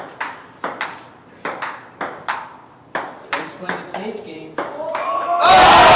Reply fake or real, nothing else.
real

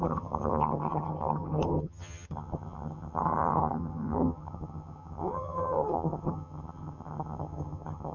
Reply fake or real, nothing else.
fake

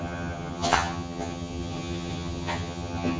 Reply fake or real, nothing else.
fake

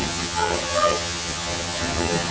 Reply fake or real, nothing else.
fake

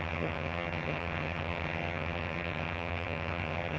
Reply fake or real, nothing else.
fake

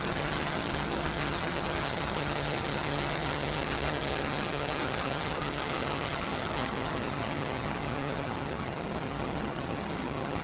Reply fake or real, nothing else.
fake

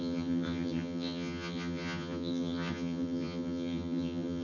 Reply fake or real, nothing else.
fake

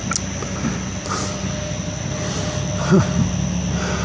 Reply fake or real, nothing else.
real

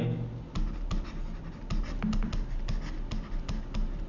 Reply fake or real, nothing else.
real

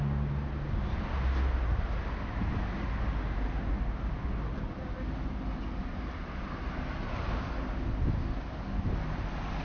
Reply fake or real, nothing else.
real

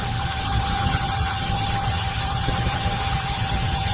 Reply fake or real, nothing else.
fake